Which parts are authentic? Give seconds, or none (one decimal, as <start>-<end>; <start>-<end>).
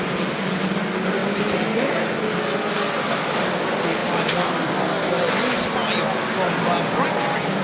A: 0.0-7.6